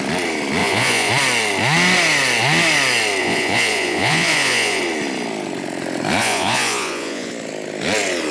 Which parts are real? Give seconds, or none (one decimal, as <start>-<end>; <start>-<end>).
0.0-0.6; 1.1-3.2; 4.8-6.2; 7.3-8.3